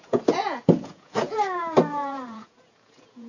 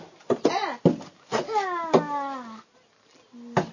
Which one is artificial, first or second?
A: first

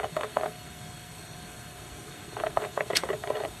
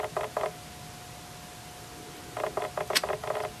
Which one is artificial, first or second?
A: first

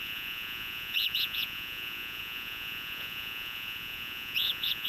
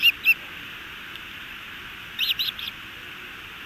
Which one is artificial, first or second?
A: first